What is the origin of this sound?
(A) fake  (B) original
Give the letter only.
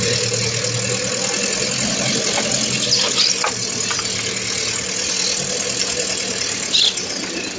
B